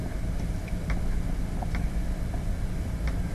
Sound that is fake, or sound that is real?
fake